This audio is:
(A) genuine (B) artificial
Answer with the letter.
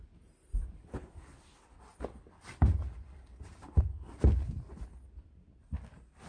A